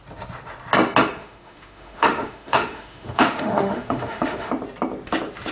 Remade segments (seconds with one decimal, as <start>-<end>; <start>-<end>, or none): 1.2-4.5